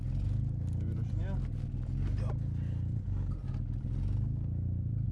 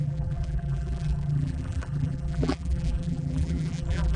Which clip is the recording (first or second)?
first